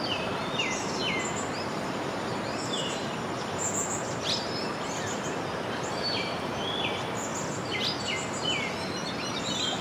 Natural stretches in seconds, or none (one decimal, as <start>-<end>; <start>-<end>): 1.0-1.7; 3.0-5.8; 7.3-9.4